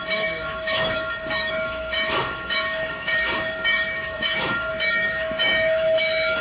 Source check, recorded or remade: remade